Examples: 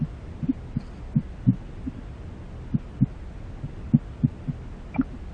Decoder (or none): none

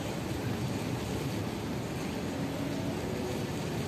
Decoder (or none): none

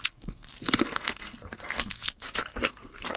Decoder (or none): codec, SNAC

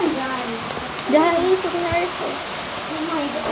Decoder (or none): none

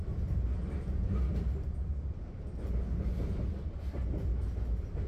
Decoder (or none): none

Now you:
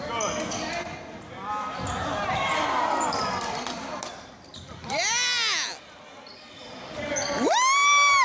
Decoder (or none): none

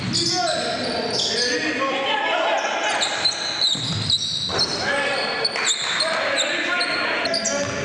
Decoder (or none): none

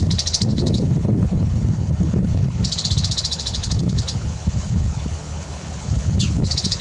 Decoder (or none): codec, HILCodec